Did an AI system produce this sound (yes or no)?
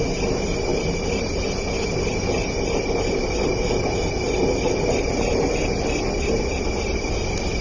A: no